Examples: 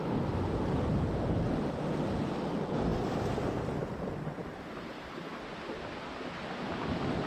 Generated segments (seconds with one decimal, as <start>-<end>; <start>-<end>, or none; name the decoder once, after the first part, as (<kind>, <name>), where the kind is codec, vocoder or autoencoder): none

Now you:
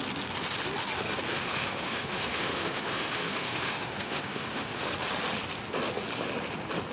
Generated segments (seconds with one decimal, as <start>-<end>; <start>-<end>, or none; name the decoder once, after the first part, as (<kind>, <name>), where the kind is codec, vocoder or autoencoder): 1.3-4.9 (autoencoder, DAC-VAE)

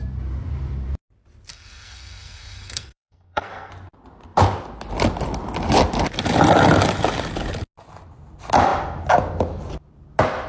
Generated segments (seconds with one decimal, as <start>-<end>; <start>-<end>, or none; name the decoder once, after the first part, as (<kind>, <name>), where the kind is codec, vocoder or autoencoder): 1.5-3.7 (codec, SNAC)

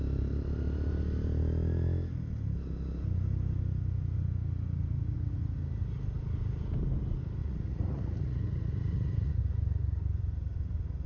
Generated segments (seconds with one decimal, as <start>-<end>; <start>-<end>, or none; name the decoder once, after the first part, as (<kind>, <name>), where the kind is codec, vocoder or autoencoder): 7.4-9.4 (vocoder, Vocos)

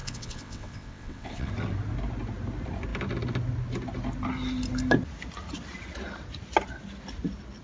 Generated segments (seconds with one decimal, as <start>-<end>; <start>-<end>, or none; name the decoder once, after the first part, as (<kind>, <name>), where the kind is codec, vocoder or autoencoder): 0.0-1.5 (vocoder, WaveNeXt)

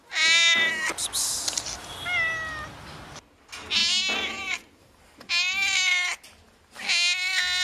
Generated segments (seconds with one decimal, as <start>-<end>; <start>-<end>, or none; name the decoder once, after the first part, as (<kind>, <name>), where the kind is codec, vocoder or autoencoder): none

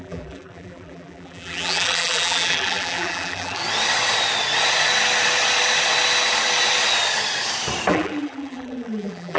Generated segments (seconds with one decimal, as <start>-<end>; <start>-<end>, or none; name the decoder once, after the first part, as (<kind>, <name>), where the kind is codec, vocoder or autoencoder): 0.0-3.6 (vocoder, BigVGAN v2); 7.9-9.4

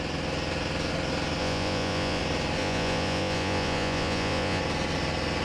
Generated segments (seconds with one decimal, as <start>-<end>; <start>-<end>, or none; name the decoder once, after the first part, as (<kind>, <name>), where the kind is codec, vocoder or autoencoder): 1.4-2.2 (vocoder, Vocos); 2.6-4.6